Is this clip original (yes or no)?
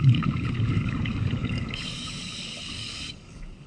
no